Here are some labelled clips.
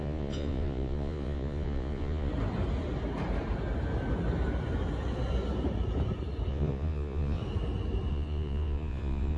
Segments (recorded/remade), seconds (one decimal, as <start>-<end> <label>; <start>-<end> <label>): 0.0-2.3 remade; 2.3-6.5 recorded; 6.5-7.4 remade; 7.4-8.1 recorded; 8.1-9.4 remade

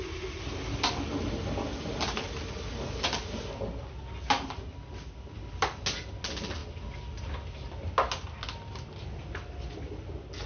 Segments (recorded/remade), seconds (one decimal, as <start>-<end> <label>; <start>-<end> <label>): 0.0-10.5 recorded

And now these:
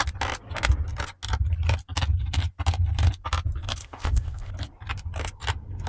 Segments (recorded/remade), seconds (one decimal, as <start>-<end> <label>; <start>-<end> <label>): 0.0-3.8 recorded; 3.8-4.5 remade; 4.5-5.9 recorded

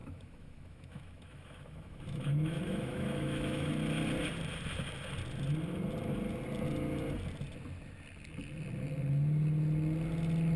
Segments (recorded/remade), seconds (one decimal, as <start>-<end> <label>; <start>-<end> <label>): 0.0-3.7 remade; 3.7-10.6 recorded

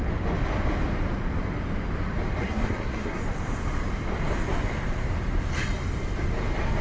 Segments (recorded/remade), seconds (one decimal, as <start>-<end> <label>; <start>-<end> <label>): 0.0-2.4 recorded; 2.4-3.2 remade; 3.2-6.8 recorded

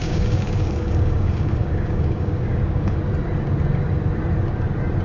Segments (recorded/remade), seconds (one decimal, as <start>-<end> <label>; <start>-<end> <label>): 0.0-3.0 remade; 3.0-5.0 recorded

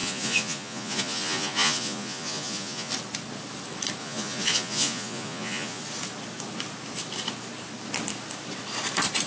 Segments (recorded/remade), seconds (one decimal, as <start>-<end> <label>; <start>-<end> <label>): 0.0-2.9 remade; 2.9-4.0 recorded; 4.0-5.8 remade; 5.8-9.3 recorded